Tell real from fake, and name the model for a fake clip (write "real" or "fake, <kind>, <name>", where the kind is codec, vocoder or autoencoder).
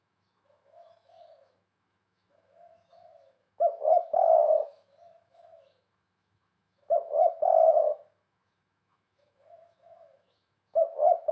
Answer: fake, autoencoder, DAC-VAE